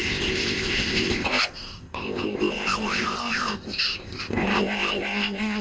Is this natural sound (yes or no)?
no